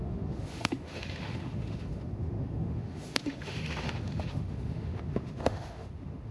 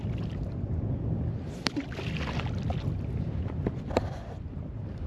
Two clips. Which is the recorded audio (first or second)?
second